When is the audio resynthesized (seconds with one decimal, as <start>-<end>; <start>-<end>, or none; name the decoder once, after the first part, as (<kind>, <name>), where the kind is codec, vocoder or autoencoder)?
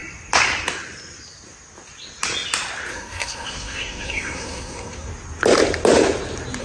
2.9-5.1 (codec, SNAC)